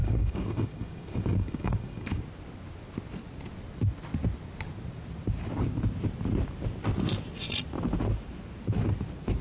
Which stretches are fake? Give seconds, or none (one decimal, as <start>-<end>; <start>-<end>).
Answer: 0.0-2.2